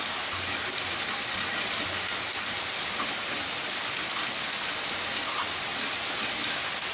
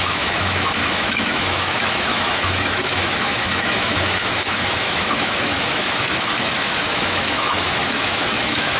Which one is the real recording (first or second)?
first